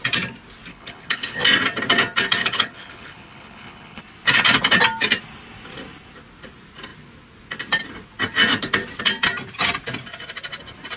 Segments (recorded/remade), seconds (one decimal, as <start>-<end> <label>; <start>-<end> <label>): 0.0-0.7 recorded; 0.7-1.4 remade; 1.4-2.4 recorded; 2.4-4.0 remade; 4.0-11.0 recorded